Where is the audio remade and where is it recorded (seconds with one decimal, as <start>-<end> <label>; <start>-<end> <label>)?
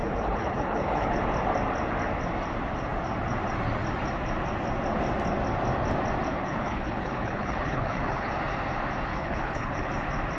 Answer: 0.0-1.1 remade; 1.1-6.3 recorded; 6.3-8.3 remade; 8.3-9.1 recorded; 9.1-9.9 remade; 9.9-10.4 recorded